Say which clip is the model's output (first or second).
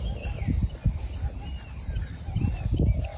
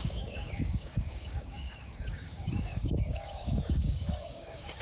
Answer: second